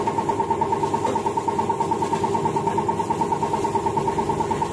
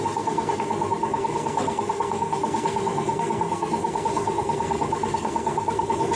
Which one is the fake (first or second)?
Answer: second